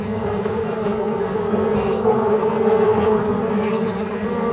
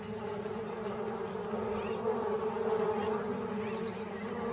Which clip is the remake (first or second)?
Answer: first